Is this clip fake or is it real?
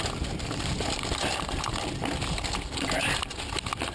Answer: real